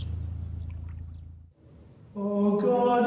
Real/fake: real